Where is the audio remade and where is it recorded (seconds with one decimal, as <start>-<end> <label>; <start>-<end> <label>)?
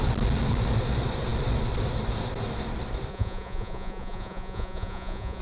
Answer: 0.0-3.1 recorded; 3.1-5.4 remade